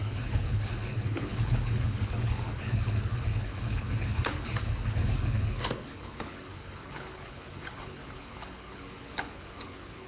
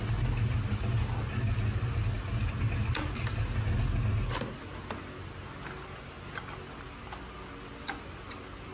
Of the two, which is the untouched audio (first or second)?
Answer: second